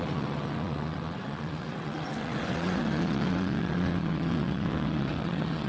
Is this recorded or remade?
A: remade